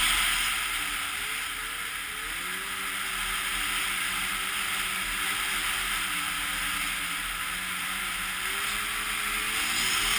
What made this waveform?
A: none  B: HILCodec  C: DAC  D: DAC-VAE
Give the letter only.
A